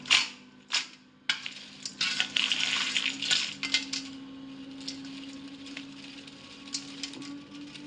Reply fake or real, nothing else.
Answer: real